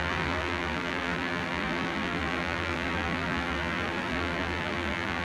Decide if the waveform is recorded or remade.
remade